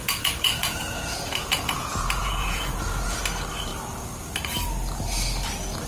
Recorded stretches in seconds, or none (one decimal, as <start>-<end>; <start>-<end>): 3.2-5.9